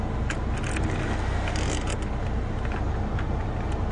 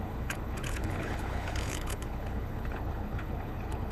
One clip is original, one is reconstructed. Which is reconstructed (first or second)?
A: second